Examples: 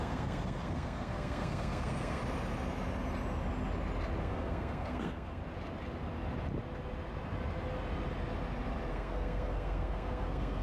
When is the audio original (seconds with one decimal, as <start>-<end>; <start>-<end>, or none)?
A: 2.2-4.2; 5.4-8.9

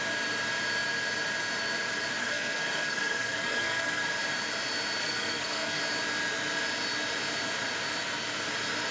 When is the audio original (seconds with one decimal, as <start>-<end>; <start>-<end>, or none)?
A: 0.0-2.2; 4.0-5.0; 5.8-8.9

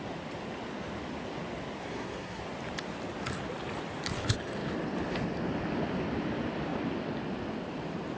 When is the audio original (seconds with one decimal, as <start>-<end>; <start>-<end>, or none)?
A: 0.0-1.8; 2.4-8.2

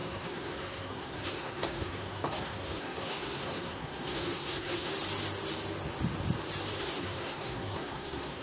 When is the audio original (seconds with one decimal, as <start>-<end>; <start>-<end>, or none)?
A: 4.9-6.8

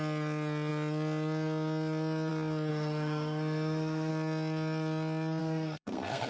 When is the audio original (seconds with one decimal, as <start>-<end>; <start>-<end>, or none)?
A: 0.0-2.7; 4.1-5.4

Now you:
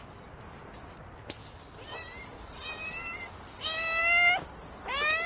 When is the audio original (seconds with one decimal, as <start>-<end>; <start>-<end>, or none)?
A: 0.0-5.3